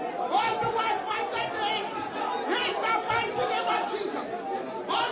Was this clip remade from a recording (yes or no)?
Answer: no